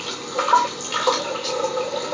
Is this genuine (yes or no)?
yes